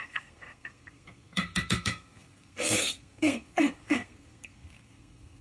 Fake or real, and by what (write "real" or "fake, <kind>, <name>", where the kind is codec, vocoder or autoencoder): fake, codec, SNAC